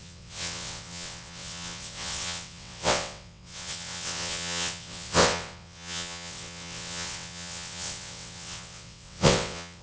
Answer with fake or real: fake